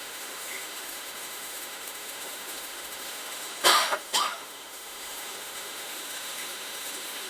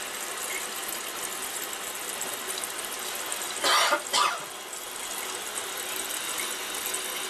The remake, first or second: first